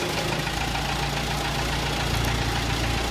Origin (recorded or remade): recorded